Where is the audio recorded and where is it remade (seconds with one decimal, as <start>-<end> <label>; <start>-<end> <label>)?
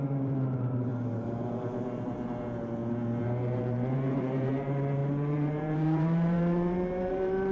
0.0-0.9 remade; 0.9-3.2 recorded; 3.2-7.5 remade